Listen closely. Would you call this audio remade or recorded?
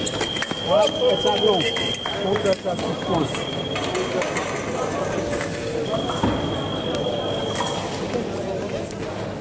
recorded